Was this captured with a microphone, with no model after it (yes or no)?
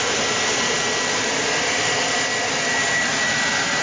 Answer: yes